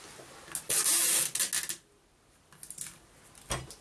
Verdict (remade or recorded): recorded